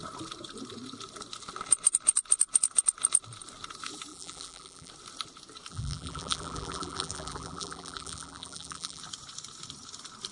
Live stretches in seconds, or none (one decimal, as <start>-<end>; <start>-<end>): 0.0-4.1; 4.9-5.7; 9.0-10.3